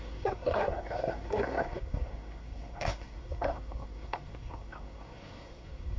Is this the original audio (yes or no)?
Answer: no